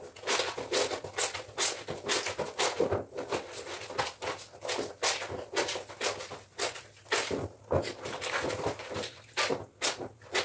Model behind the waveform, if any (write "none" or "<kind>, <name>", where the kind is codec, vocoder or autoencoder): none